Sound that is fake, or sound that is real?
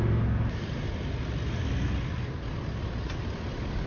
real